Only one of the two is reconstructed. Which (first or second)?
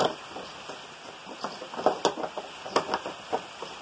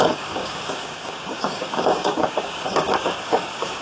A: second